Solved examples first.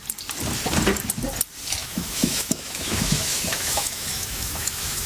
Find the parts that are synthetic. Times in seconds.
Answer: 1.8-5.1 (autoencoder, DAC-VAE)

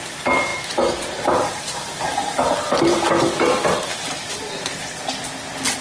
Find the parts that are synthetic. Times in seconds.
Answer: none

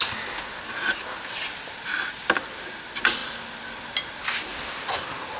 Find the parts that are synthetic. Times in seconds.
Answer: none

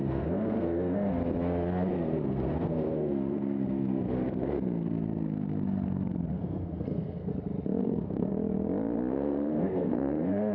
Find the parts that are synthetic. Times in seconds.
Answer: 0.0-1.2 (codec, SNAC); 1.9-7.3; 7.8-8.3; 9.1-10.5

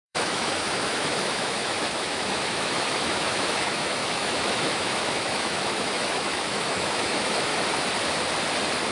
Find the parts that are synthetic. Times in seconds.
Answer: 0.0-7.5 (autoencoder, DAC-VAE)

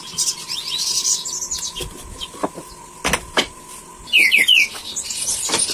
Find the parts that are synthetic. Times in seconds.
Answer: none

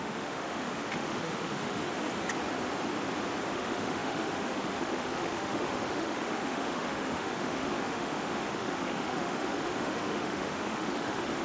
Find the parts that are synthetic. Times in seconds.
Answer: 0.0-1.8 (autoencoder, DAC-VAE); 3.5-11.4

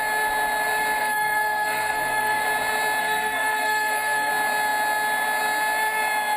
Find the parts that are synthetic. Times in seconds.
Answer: 1.0-2.4 (codec, SNAC); 3.0-4.3